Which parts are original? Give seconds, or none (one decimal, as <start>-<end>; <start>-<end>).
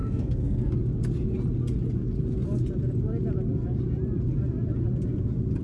0.7-5.6